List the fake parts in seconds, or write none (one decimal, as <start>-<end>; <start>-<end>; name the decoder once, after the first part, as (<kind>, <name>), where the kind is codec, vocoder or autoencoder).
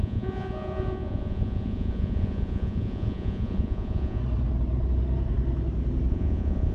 0.0-4.2 (vocoder, Vocos); 6.1-6.7